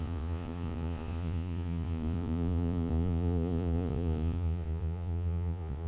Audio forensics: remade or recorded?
remade